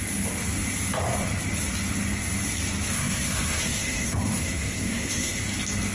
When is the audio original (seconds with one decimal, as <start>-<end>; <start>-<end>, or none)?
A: 0.0-2.9; 5.4-5.9